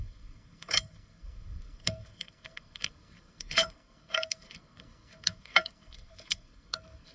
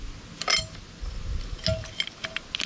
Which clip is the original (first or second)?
second